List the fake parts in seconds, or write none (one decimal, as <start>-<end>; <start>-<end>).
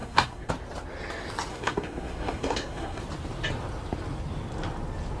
0.0-0.5; 1.5-3.0